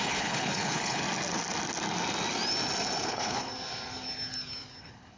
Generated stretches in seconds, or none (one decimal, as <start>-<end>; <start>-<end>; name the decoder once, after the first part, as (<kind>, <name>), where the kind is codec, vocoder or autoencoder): 0.0-1.0 (codec, HILCodec); 3.1-3.5; 4.8-5.2